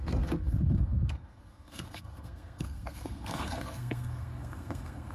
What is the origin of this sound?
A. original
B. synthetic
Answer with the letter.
B